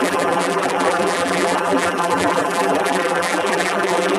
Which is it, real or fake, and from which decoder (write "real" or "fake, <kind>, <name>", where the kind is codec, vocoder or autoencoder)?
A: fake, vocoder, BigVGAN v2